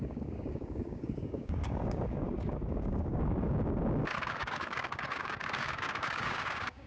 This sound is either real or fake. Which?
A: fake